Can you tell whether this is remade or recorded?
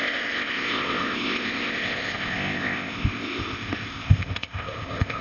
remade